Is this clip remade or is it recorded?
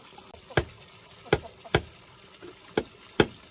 recorded